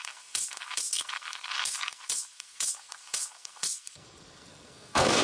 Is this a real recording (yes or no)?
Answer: no